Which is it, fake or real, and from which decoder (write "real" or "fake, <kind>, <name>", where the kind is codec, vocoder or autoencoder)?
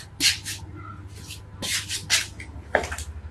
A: real